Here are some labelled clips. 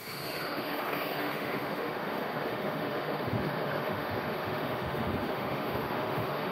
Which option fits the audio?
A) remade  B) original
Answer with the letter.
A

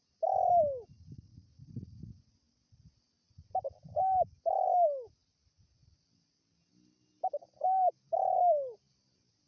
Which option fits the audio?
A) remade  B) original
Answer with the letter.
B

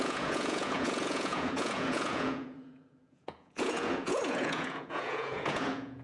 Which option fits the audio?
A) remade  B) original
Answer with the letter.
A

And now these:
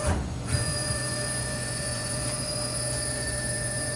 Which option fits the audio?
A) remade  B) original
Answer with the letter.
A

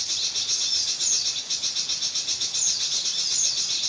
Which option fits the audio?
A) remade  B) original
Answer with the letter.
B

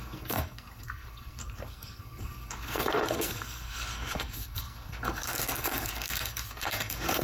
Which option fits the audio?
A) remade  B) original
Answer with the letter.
A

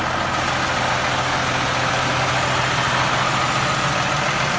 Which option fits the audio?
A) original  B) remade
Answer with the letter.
A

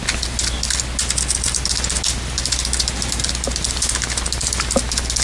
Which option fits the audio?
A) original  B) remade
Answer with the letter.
A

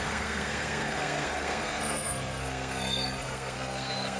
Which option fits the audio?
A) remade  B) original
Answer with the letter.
A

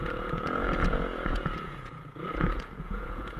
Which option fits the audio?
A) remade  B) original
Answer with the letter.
A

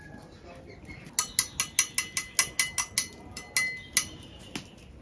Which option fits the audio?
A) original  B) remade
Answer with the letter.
A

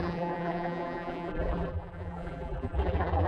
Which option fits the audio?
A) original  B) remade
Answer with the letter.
B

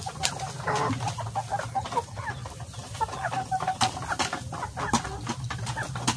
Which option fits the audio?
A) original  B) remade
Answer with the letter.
B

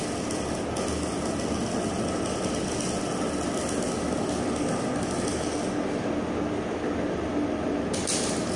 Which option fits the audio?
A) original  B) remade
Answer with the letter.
A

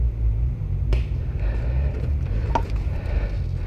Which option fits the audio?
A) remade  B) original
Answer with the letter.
B